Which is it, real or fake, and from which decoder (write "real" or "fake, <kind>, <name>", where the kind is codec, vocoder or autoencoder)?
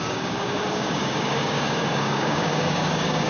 fake, codec, DAC